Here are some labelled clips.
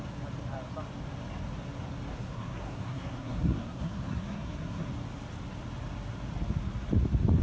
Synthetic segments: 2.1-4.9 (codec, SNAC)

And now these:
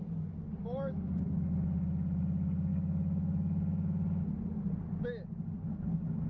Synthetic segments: 0.6-1.3 (autoencoder, DAC-VAE); 2.7-4.2